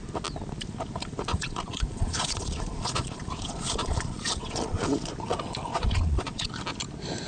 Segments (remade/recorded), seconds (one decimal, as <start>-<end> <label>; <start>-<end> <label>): 0.0-1.3 recorded; 1.3-4.8 remade; 4.8-5.7 recorded; 5.7-6.5 remade; 6.5-7.3 recorded